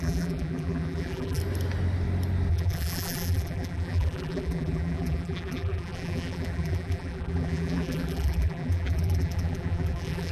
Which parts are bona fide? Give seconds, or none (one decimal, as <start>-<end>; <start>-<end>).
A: 1.4-2.5